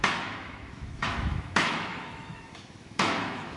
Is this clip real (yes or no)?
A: no